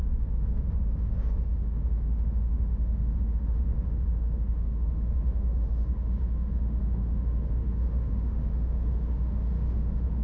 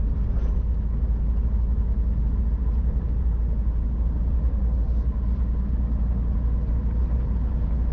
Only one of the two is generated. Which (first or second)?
first